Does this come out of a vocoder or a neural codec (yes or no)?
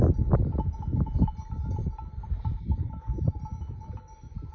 yes